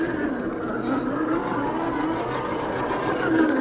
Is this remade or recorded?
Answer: recorded